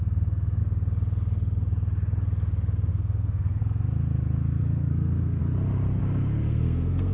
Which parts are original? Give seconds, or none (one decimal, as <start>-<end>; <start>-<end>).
0.6-2.9; 3.6-4.6; 5.4-6.0